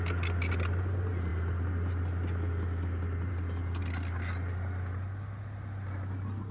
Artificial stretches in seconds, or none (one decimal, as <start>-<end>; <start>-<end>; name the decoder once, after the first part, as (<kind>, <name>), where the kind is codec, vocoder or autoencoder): none